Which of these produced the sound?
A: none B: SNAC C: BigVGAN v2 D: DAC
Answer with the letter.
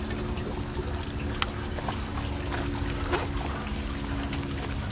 A